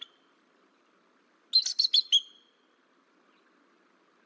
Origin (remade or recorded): recorded